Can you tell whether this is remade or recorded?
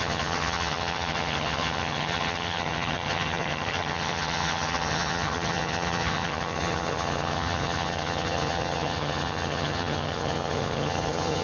remade